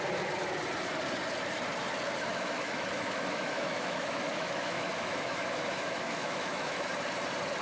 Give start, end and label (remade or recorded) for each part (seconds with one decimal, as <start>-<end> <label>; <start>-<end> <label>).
0.0-2.3 recorded; 2.3-6.9 remade; 6.9-7.6 recorded